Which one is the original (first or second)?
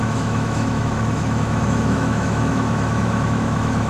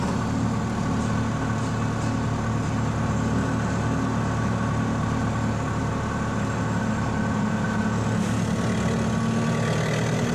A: second